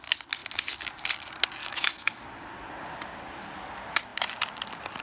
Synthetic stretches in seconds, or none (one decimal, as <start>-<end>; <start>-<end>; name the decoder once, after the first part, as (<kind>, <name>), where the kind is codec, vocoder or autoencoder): 1.6-2.2 (autoencoder, DAC-VAE)

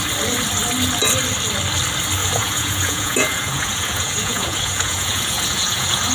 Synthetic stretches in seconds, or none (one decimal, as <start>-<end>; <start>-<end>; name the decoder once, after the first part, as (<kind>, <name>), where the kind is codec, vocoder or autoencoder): 2.2-6.1 (vocoder, Vocos)

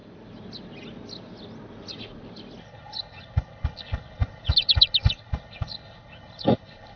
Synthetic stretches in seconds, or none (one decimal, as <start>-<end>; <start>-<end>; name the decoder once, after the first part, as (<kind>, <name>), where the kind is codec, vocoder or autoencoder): 2.6-7.0 (codec, HILCodec)

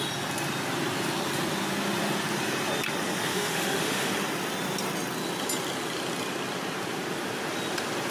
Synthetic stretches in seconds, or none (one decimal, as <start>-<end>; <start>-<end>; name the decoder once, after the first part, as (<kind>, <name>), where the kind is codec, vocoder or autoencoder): 3.3-4.1 (autoencoder, DAC-VAE)

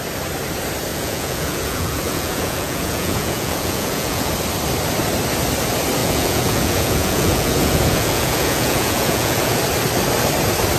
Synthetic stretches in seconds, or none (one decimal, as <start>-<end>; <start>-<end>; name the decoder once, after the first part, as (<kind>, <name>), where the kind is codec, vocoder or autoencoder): 0.9-4.3 (vocoder, Vocos); 6.0-9.6